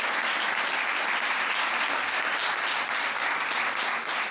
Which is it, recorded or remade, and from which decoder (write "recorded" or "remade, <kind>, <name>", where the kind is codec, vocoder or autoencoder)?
recorded